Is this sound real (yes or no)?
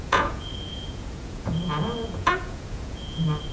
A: no